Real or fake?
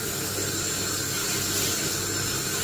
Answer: real